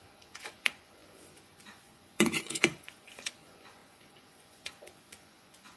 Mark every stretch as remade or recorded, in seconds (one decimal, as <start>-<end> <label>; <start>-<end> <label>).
0.0-5.8 remade